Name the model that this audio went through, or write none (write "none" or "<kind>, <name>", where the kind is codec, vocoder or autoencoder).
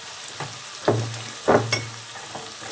none